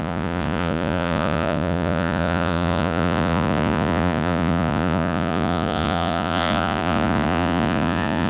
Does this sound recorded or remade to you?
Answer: remade